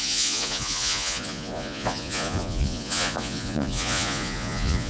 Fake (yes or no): yes